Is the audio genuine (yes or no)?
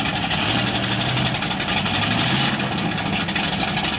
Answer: yes